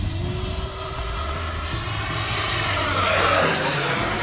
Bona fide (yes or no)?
yes